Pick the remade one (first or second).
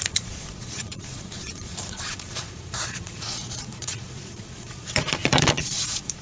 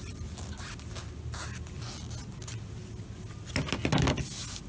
first